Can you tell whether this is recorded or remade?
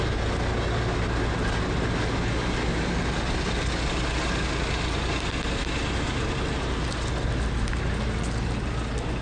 recorded